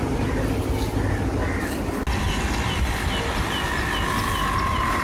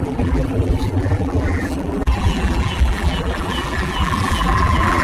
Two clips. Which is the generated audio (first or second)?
second